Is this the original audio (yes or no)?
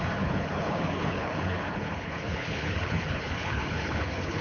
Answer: no